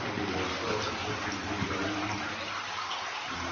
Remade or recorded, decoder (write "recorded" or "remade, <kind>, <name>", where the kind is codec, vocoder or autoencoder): recorded